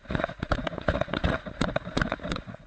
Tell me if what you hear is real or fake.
fake